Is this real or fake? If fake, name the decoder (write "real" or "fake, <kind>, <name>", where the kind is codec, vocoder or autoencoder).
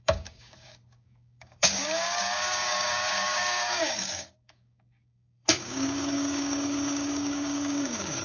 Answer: fake, codec, DAC